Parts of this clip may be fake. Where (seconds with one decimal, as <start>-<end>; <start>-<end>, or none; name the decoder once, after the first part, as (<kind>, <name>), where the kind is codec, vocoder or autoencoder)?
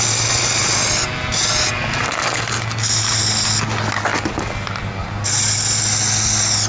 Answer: none